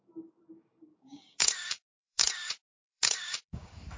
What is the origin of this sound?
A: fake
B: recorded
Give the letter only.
A